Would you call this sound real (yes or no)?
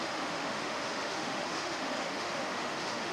no